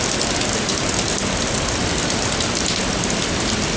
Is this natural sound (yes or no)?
yes